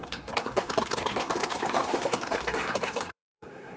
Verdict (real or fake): fake